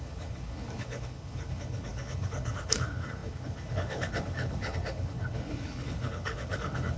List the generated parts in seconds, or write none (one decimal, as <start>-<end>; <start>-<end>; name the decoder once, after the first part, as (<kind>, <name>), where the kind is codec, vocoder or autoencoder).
0.0-7.0 (codec, HILCodec)

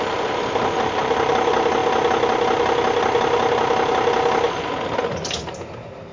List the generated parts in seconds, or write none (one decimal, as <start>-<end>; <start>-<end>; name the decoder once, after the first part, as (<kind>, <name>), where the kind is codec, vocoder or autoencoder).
none

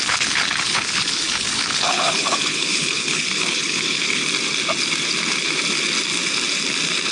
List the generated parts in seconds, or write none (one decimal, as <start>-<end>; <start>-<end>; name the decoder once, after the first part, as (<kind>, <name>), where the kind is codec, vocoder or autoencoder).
0.0-4.2 (codec, HILCodec)

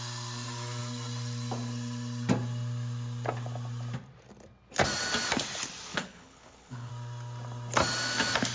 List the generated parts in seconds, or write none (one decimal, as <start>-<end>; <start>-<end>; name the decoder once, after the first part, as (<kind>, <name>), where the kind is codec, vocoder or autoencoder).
5.9-6.9 (codec, HILCodec)

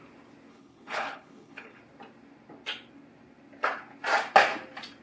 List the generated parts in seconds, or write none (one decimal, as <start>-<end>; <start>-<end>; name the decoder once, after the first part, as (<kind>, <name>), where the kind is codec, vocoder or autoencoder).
0.5-1.8 (codec, HILCodec)